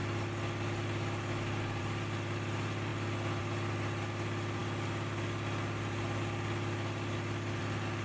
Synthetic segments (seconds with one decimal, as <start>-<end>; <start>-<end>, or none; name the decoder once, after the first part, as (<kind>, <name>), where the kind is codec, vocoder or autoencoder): none